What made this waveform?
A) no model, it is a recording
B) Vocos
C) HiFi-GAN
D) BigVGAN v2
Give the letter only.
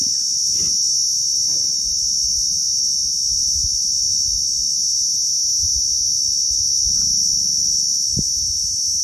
A